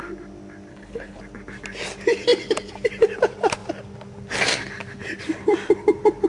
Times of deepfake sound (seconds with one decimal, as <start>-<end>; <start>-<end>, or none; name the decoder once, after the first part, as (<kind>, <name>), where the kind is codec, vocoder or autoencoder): 0.7-1.2 (codec, HILCodec)